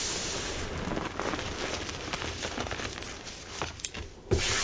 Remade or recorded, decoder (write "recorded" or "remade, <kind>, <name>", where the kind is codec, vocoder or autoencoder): recorded